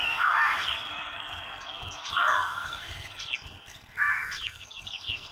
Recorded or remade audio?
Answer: remade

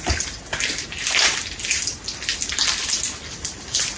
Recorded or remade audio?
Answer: recorded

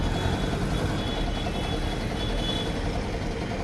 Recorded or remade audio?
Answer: recorded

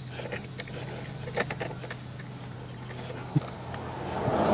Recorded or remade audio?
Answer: recorded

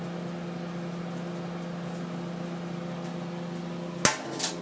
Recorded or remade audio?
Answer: recorded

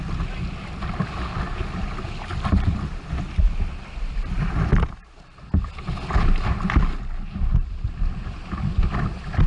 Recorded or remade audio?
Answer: recorded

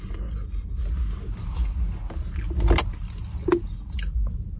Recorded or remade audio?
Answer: recorded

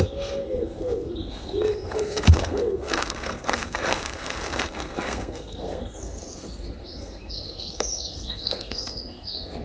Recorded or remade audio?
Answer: remade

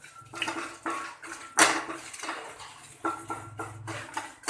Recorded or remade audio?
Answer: recorded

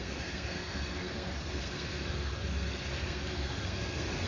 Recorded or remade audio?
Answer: remade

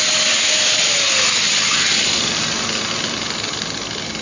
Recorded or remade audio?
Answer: recorded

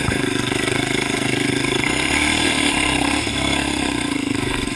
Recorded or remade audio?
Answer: remade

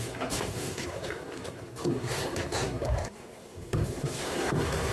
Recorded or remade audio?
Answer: remade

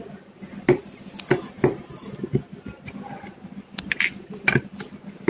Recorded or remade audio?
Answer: recorded